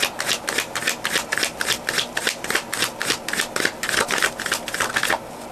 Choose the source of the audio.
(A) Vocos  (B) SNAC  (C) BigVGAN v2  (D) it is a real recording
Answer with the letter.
D